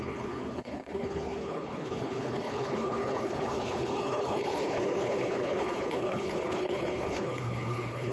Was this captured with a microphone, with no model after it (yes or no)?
no